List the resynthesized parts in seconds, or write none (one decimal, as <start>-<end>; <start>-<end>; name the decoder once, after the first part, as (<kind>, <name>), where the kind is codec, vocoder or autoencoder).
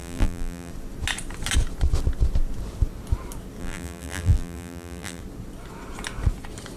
0.0-0.7 (vocoder, BigVGAN v2); 3.6-5.2